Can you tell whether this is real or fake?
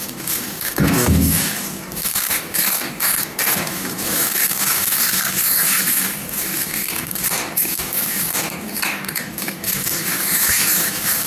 fake